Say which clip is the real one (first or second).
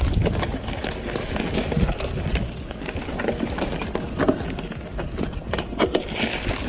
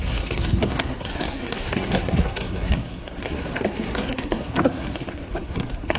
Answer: first